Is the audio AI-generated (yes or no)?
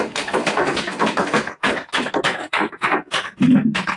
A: yes